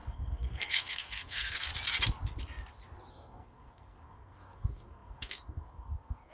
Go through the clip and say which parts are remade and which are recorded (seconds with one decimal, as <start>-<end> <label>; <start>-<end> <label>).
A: 0.0-1.7 remade; 1.7-3.1 recorded; 3.1-6.3 remade